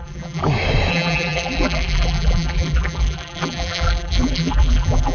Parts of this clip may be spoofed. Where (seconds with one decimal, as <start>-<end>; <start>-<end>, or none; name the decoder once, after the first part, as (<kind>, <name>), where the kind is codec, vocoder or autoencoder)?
0.0-0.4 (vocoder, BigVGAN v2); 0.9-5.1